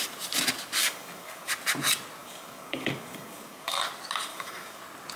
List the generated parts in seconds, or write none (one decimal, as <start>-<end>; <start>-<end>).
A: 0.8-1.5; 2.2-3.9; 4.3-4.8